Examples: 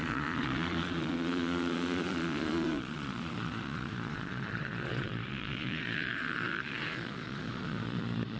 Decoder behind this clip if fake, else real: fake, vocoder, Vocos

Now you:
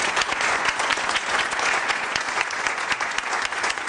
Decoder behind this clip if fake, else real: fake, vocoder, Vocos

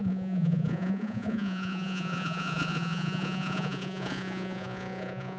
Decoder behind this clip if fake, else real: fake, vocoder, Vocos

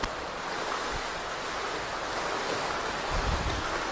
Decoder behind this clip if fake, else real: real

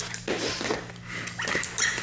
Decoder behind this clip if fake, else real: real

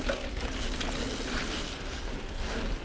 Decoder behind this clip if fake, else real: real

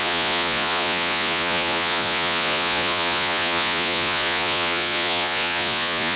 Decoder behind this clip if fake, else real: fake, vocoder, Vocos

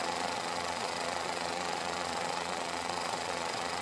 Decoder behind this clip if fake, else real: fake, vocoder, Vocos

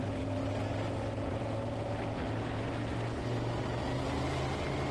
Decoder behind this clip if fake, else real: real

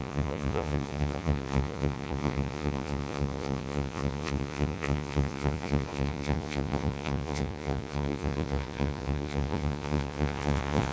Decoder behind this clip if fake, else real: fake, vocoder, Vocos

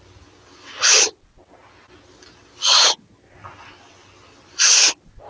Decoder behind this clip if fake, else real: real